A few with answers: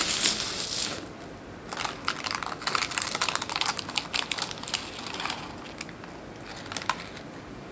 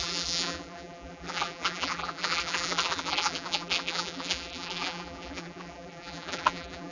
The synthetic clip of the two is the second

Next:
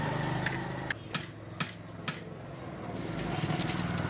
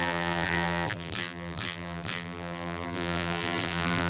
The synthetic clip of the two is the second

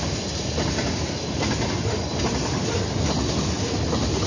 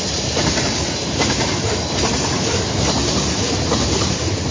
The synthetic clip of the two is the second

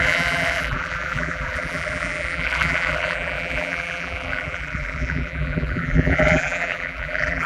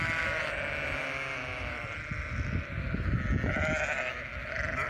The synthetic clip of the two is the first